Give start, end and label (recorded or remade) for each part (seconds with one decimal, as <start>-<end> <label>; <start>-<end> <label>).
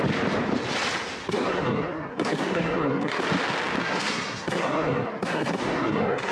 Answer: 0.0-1.2 recorded; 1.2-3.2 remade; 3.2-3.8 recorded; 3.8-6.3 remade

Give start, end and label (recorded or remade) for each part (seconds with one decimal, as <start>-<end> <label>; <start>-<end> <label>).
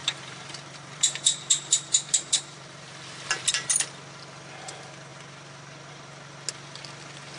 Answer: 0.0-3.7 remade; 3.7-7.4 recorded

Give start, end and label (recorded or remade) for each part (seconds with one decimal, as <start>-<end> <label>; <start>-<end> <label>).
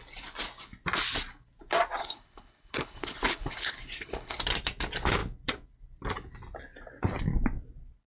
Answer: 0.0-2.0 recorded; 2.0-4.4 remade; 4.4-8.1 recorded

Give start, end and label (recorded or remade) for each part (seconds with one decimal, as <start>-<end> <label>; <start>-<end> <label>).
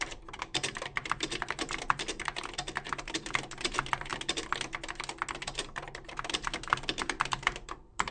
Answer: 0.0-4.1 remade; 4.1-5.7 recorded; 5.7-8.1 remade